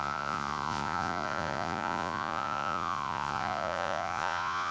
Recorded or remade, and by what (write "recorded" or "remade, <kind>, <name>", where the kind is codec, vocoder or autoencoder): remade, vocoder, Vocos